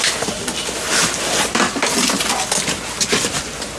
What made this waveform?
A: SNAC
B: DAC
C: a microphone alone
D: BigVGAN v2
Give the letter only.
D